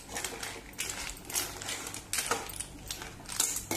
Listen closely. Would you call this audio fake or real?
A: real